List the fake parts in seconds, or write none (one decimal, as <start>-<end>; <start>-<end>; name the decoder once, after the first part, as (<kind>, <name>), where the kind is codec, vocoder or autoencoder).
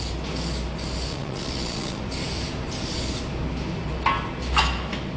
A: 1.1-2.0 (vocoder, Vocos)